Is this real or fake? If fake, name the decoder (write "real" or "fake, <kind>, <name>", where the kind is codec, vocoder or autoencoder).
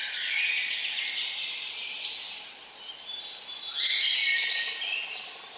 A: real